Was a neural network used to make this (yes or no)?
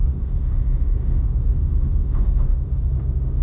yes